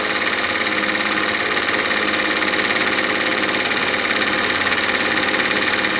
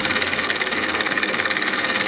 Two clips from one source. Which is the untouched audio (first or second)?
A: first